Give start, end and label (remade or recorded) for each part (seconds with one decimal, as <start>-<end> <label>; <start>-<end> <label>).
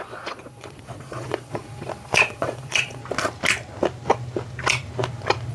0.0-3.0 remade; 3.0-5.5 recorded